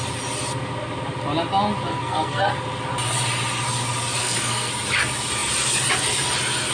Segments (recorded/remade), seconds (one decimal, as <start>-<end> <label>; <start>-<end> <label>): 0.0-1.9 recorded; 1.9-2.5 remade; 2.5-4.2 recorded; 4.2-4.7 remade; 4.7-6.7 recorded